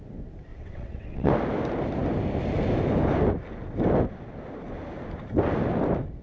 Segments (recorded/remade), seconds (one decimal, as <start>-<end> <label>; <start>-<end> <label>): 0.0-0.5 recorded; 0.5-1.3 remade; 1.3-6.2 recorded